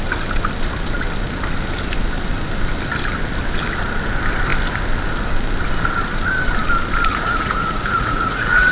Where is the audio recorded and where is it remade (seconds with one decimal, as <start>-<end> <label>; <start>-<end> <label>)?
0.0-7.1 recorded; 7.1-8.7 remade